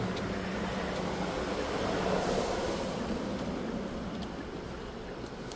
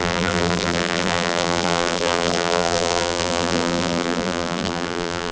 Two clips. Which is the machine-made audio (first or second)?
second